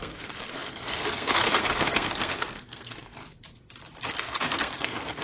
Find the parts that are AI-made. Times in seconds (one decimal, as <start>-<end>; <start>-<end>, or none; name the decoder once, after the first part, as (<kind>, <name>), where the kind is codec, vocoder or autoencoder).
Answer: 0.0-3.2 (codec, SNAC); 4.1-5.2